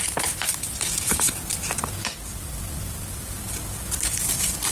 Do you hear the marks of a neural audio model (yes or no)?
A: no